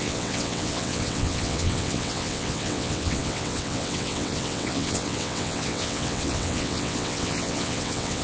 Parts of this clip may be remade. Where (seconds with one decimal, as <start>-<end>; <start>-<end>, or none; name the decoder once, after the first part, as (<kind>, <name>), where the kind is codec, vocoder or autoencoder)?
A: 0.0-8.2 (vocoder, WaveNeXt)